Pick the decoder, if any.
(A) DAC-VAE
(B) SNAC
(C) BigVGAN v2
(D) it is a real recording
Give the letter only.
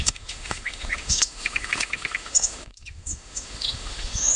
A